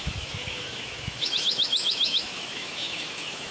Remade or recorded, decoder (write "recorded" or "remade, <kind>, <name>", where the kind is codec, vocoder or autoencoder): remade, autoencoder, DAC-VAE